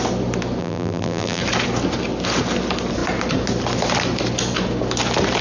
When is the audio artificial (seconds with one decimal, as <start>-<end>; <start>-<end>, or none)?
0.6-1.4

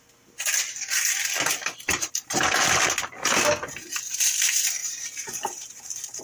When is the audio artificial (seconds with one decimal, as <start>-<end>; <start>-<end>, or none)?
4.8-6.2

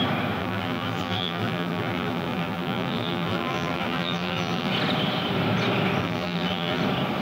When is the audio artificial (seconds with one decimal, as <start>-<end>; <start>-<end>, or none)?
0.4-4.7; 6.0-6.8

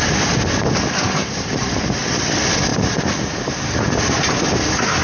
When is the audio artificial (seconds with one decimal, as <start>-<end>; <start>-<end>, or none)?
1.2-2.0

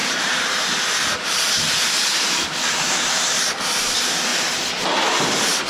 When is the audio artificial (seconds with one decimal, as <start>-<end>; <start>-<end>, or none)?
0.0-3.4

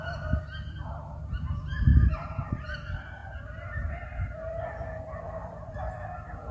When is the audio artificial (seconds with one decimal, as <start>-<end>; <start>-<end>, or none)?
0.0-1.9; 2.6-6.5